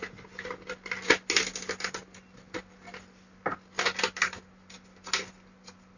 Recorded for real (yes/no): yes